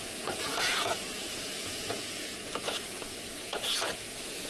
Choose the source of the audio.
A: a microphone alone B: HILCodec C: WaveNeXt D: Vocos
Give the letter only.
D